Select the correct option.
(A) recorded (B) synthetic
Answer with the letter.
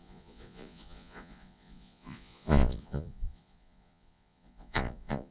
B